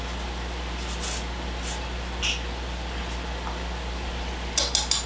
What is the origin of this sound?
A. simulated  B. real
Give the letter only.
B